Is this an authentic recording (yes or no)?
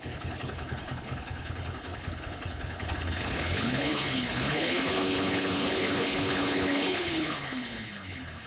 no